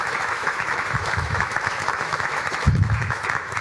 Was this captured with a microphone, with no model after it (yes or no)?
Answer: no